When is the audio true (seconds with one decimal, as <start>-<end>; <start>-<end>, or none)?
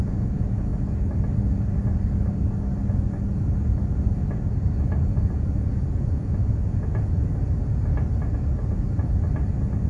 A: 0.7-4.8; 7.5-9.9